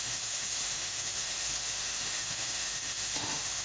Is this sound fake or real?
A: fake